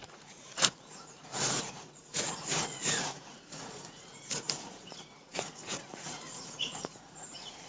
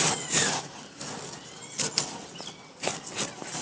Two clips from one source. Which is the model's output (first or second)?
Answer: first